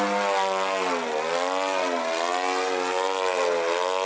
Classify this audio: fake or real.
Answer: real